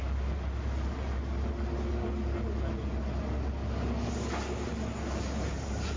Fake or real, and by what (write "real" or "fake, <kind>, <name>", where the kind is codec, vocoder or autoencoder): real